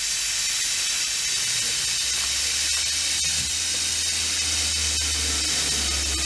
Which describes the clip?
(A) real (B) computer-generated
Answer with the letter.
A